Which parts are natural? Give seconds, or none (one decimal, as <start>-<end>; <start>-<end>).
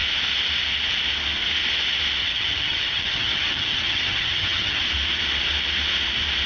0.0-2.2; 4.8-6.5